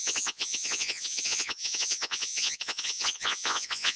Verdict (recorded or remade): remade